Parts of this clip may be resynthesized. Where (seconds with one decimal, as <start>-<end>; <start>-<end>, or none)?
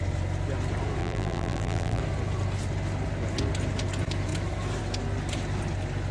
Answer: 1.0-2.0